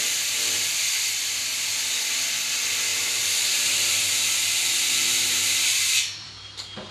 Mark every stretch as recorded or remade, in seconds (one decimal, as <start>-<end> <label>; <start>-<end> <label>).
0.0-2.9 recorded; 2.9-6.3 remade; 6.3-6.9 recorded